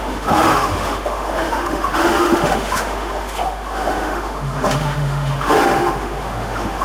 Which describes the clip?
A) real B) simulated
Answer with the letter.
B